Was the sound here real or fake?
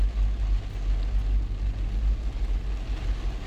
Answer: real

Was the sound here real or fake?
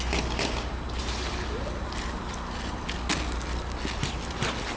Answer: real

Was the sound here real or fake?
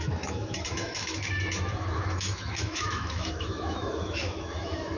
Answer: fake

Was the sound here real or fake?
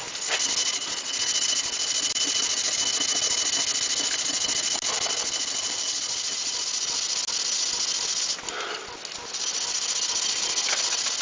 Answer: real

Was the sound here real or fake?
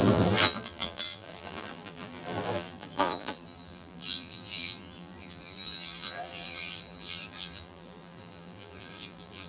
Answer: fake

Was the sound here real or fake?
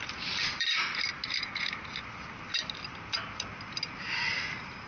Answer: real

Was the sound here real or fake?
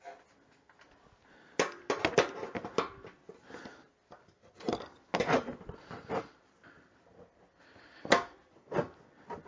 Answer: real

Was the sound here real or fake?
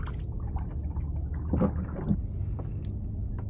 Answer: real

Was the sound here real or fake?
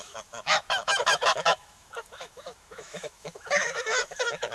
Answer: fake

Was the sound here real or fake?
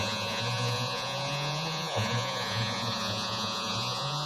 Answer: fake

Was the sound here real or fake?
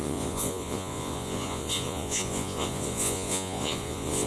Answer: fake